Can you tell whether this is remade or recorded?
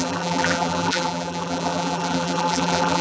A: remade